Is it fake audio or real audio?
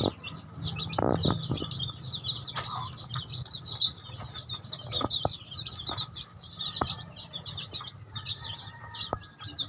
fake